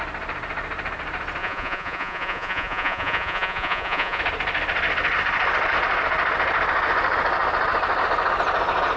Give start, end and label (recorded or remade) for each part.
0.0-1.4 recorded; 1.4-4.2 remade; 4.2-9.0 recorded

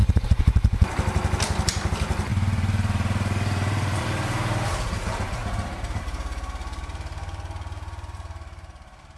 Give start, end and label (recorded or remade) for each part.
0.0-1.9 recorded; 1.9-5.4 remade; 5.4-6.8 recorded; 6.8-9.2 remade